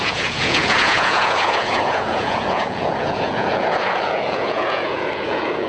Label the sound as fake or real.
fake